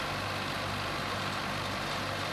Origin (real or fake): real